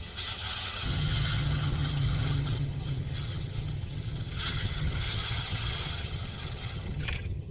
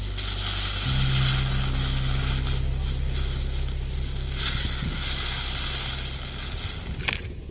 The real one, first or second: second